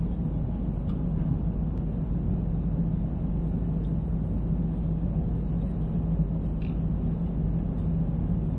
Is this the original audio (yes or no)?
yes